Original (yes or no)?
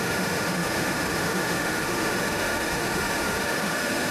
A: no